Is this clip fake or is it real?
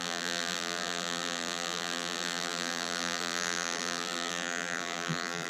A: fake